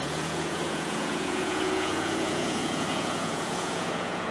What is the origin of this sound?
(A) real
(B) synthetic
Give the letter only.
B